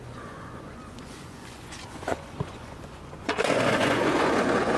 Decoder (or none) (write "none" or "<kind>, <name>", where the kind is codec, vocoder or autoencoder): vocoder, Vocos